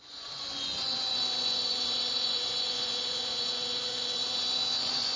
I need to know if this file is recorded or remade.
remade